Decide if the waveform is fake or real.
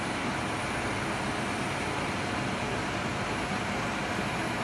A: real